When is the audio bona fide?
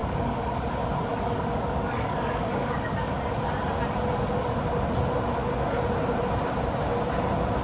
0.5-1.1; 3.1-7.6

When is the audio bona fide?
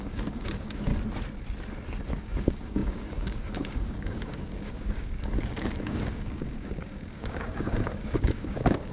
0.9-2.2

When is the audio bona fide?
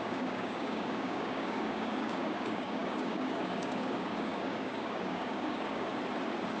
5.9-6.6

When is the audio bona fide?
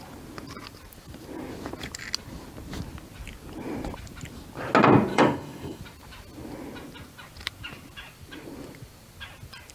0.0-5.1; 5.8-9.7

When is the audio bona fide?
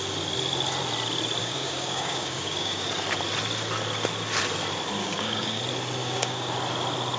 0.0-1.4; 2.9-5.0; 5.6-6.0; 6.5-7.2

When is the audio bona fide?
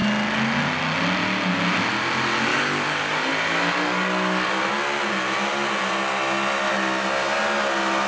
0.0-2.5; 4.8-8.1